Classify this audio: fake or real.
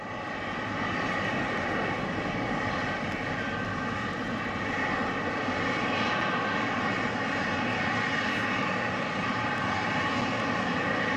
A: real